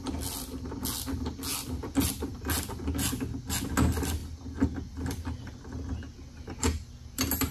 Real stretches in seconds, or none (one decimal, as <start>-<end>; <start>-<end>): 0.0-1.5; 2.1-7.5